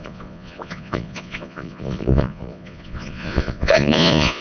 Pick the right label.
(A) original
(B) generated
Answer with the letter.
B